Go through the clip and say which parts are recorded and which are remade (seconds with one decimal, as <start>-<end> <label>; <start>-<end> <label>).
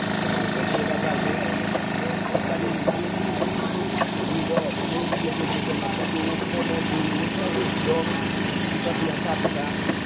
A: 0.0-1.0 recorded; 1.0-5.1 remade; 5.1-6.6 recorded; 6.6-10.1 remade